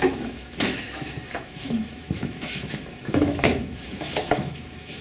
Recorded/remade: remade